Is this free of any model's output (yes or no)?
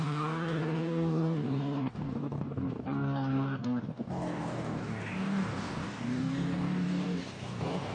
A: no